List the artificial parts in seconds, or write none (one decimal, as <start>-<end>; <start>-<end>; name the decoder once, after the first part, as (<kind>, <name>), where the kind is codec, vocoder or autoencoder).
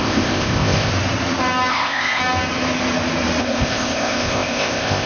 0.0-0.9 (codec, ZipCodec); 1.7-2.2; 3.4-5.1